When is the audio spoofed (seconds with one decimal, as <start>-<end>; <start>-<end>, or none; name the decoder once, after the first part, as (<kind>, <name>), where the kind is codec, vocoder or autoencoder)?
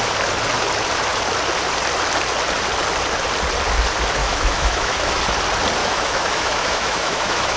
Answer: 4.2-5.2 (autoencoder, DAC-VAE); 5.8-7.6